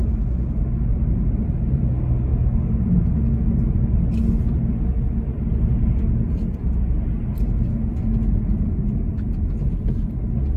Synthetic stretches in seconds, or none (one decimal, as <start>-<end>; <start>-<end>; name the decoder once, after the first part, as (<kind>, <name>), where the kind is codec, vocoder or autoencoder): 0.9-1.9 (vocoder, BigVGAN v2)